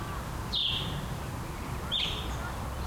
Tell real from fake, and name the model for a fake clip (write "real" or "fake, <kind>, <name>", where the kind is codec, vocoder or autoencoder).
real